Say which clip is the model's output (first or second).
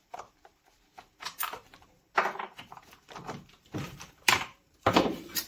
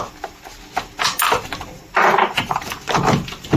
first